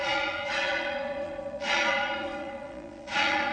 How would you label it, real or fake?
fake